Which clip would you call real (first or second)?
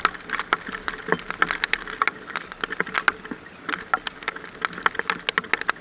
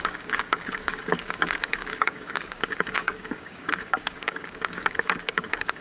first